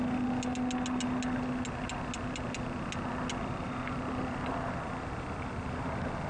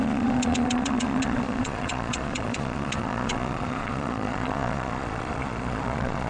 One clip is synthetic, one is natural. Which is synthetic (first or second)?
second